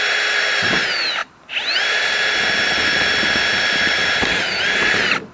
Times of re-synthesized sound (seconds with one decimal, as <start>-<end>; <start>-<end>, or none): 0.0-5.3